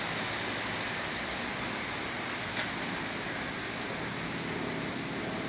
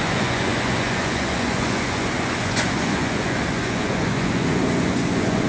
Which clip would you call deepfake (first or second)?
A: second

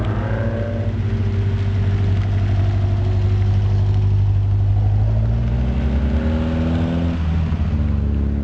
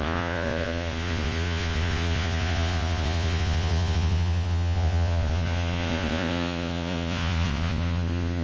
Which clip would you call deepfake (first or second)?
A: second